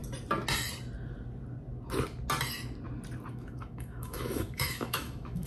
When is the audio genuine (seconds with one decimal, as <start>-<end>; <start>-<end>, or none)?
0.0-3.3

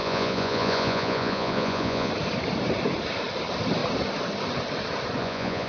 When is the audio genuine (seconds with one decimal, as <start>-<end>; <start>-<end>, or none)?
2.1-5.2

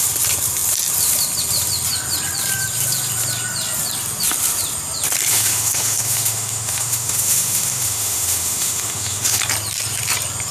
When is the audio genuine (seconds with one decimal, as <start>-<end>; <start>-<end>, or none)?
0.0-5.3; 9.4-10.5

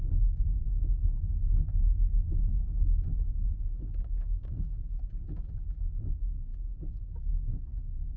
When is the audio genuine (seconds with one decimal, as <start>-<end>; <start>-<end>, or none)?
0.0-8.2